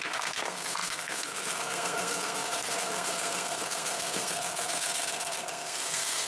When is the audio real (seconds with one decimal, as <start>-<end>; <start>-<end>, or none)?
none